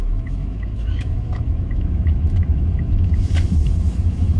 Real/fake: fake